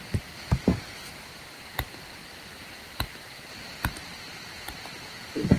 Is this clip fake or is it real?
fake